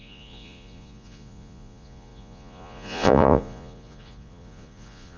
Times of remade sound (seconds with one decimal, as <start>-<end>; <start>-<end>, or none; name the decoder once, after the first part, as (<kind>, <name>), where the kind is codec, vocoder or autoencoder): 0.0-5.2 (vocoder, Vocos)